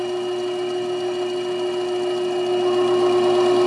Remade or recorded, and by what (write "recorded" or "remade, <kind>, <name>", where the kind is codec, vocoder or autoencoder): recorded